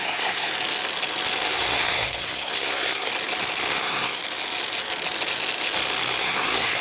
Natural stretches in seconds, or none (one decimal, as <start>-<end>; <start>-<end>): 0.5-1.5; 3.1-3.8; 4.2-6.2